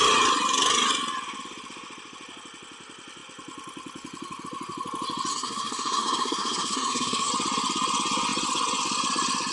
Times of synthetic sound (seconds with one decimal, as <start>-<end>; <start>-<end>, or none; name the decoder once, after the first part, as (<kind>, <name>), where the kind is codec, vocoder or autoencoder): 5.3-7.3 (codec, SNAC)